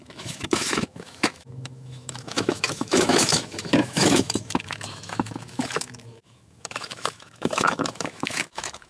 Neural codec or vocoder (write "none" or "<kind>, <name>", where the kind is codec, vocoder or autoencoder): autoencoder, DAC-VAE